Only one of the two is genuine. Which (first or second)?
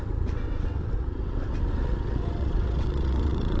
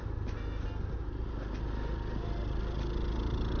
second